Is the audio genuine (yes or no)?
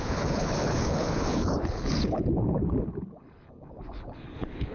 no